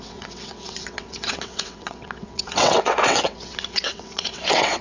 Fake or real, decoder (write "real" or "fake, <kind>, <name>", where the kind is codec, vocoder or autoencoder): fake, vocoder, WaveNeXt